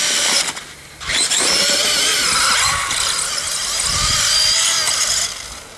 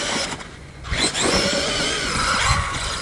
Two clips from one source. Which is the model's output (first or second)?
second